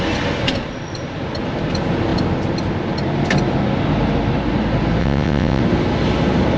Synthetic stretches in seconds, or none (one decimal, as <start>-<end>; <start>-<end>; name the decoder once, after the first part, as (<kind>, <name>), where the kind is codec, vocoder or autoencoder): 5.0-5.6 (vocoder, WaveNeXt)